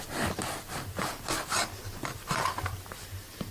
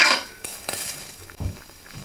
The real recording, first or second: first